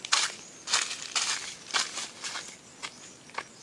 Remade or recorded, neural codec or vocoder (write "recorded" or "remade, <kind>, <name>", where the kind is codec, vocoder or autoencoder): recorded